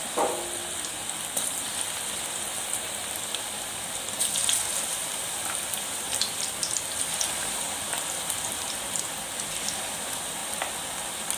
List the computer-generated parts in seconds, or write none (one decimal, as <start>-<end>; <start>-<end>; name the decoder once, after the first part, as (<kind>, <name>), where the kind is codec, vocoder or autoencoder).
0.0-0.6 (vocoder, BigVGAN v2); 3.6-10.4; 11.0-11.4